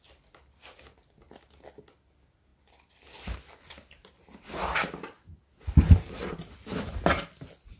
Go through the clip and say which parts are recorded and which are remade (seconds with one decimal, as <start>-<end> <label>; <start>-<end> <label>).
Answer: 0.0-7.8 recorded